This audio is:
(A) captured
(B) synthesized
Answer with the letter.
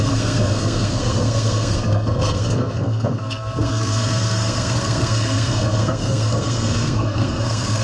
B